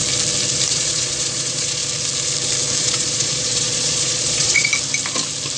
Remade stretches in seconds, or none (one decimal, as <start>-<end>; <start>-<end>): 0.7-1.8; 2.8-4.7

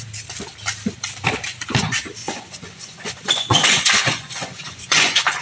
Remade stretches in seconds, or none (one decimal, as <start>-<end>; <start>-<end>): 2.2-5.4

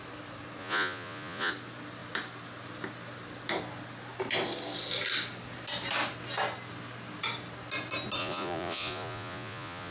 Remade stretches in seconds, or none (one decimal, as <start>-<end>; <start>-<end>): 0.6-1.5; 8.2-9.9

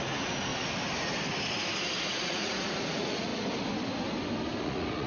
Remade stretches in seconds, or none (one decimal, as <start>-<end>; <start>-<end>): 0.0-0.5; 2.0-3.3; 4.6-5.1

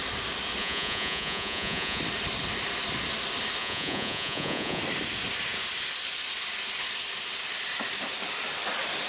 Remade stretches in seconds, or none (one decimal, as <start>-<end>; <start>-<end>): 0.6-2.0; 3.6-4.8